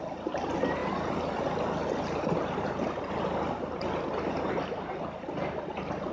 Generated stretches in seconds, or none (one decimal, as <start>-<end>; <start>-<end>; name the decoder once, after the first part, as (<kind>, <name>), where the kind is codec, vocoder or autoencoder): none